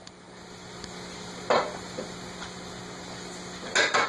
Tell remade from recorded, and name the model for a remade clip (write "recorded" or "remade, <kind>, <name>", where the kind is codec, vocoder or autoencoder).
recorded